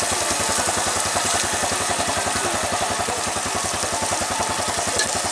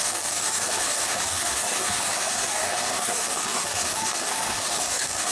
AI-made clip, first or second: second